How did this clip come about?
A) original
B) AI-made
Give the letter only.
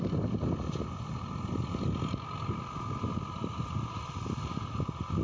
A